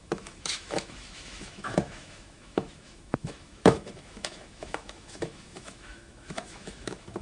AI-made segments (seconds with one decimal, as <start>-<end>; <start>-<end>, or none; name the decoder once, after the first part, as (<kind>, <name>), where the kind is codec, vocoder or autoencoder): 0.0-7.2 (autoencoder, DAC-VAE)